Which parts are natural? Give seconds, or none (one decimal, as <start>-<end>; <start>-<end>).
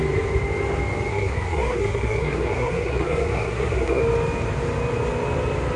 0.0-1.1; 4.0-5.8